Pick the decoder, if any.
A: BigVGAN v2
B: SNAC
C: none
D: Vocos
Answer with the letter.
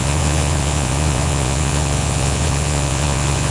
D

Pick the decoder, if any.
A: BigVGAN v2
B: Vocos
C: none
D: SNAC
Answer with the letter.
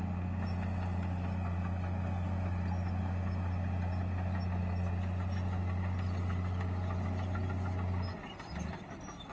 C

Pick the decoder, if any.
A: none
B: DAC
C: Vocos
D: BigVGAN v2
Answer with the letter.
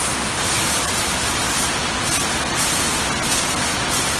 A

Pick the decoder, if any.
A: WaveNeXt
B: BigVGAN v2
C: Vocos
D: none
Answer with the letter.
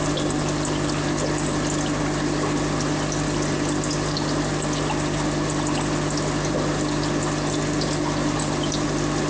D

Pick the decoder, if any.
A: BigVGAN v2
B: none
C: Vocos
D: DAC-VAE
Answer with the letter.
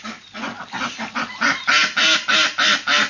B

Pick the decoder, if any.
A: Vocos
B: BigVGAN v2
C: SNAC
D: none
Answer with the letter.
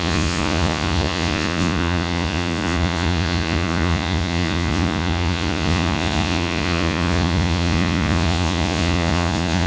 A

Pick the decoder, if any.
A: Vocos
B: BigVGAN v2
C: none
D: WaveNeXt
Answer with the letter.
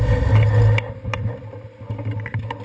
C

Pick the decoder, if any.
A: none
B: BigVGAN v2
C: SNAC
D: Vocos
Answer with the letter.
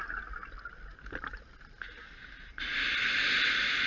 A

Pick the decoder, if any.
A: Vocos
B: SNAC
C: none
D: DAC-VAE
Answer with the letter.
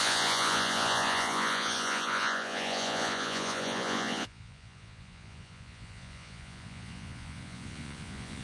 A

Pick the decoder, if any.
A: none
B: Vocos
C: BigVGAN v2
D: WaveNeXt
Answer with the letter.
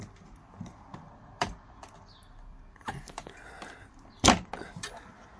A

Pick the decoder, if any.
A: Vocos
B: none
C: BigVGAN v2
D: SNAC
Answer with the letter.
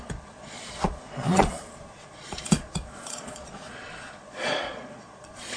A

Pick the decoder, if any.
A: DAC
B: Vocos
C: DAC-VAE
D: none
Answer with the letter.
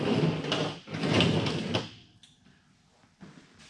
D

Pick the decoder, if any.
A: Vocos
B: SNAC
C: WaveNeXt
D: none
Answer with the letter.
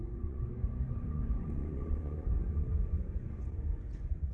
A